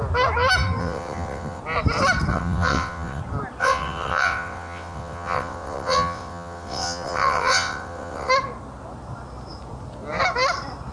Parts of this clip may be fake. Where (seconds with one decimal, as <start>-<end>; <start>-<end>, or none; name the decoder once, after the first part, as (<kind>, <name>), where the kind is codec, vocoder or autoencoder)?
0.8-1.6 (vocoder, WaveNeXt); 2.3-3.2; 3.6-8.3